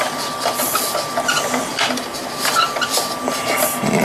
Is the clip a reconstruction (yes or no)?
no